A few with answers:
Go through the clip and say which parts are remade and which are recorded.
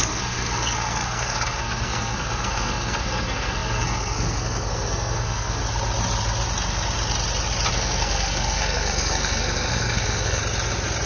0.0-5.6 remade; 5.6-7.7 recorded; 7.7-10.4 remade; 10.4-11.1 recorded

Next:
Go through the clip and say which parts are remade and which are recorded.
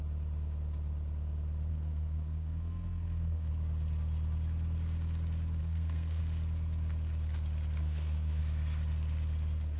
0.0-1.7 recorded; 1.7-3.5 remade; 3.5-5.6 recorded; 5.6-6.2 remade; 6.2-7.8 recorded; 7.8-8.4 remade; 8.4-9.8 recorded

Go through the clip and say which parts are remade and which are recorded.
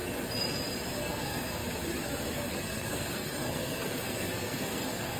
0.0-1.0 recorded; 1.0-1.6 remade; 1.6-2.5 recorded; 2.5-5.2 remade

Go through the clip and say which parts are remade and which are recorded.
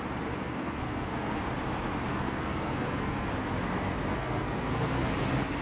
0.0-0.4 recorded; 0.4-1.4 remade; 1.4-2.1 recorded; 2.1-3.3 remade; 3.3-4.1 recorded; 4.1-5.1 remade; 5.1-5.6 recorded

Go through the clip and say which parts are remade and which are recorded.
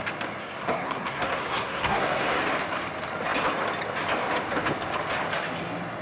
0.0-0.4 recorded; 0.4-2.4 remade; 2.4-6.0 recorded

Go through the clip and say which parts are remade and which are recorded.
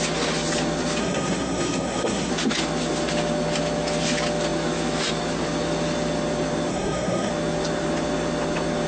0.0-1.0 recorded; 1.0-2.3 remade; 2.3-6.7 recorded; 6.7-7.3 remade; 7.3-8.9 recorded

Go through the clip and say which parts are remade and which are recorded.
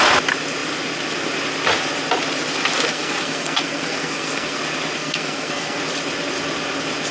0.0-2.9 recorded; 2.9-4.6 remade; 4.6-5.0 recorded; 5.0-5.8 remade; 5.8-7.1 recorded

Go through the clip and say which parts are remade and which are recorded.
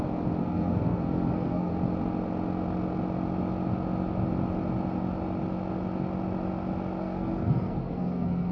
0.0-0.4 recorded; 0.4-1.7 remade; 1.7-7.0 recorded; 7.0-8.5 remade